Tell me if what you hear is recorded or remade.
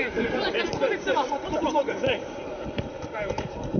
remade